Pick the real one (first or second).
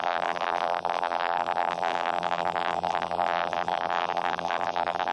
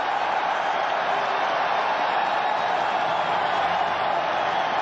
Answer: second